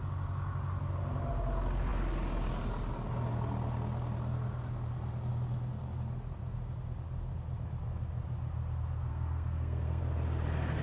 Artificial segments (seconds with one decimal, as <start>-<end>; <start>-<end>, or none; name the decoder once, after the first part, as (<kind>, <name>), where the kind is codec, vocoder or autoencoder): 9.1-10.0 (codec, SNAC)